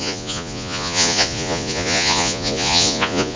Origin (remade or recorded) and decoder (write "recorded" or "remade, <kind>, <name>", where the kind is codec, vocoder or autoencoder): remade, vocoder, Vocos